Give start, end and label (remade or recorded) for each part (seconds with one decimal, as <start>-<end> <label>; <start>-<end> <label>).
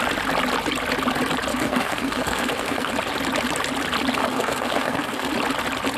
0.0-1.5 recorded; 1.5-2.9 remade; 2.9-4.2 recorded; 4.2-5.3 remade; 5.3-6.0 recorded